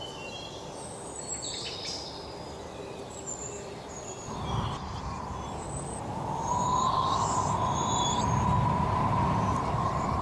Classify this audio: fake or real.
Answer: real